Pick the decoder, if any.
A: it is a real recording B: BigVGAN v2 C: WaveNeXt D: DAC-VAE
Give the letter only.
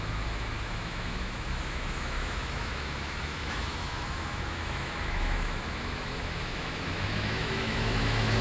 D